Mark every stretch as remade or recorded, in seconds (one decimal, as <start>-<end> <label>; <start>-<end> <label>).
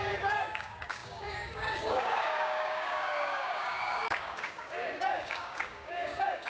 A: 0.0-6.5 remade